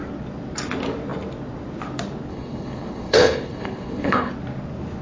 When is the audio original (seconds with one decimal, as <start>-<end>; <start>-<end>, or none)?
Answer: 0.0-2.3; 4.3-5.0